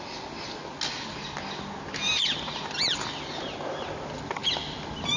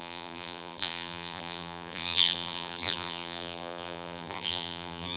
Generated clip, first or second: second